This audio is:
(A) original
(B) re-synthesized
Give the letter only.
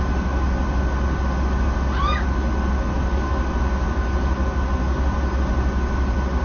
A